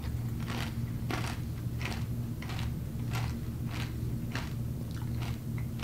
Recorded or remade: recorded